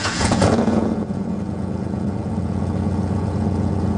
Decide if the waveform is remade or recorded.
remade